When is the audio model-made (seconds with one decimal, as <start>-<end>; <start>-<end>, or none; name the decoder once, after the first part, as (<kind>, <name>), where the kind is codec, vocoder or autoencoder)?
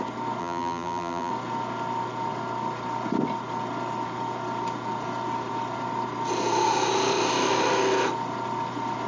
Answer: 0.4-1.3 (vocoder, BigVGAN v2)